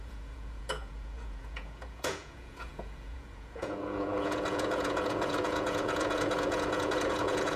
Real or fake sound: fake